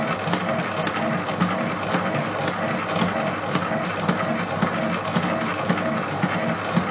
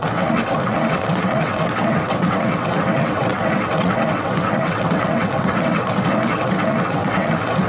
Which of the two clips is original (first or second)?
first